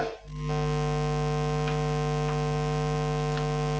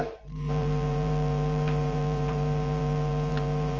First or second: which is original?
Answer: first